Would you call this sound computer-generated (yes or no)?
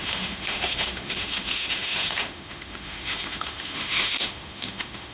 yes